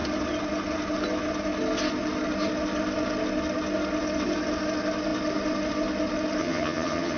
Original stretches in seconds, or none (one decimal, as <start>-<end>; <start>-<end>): 0.0-6.4